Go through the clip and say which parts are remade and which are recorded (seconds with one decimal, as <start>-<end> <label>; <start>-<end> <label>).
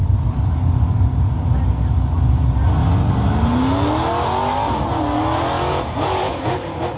0.0-5.7 recorded; 5.7-6.5 remade; 6.5-7.0 recorded